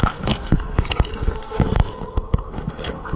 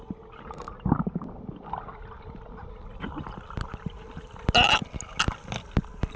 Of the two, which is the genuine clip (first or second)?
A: second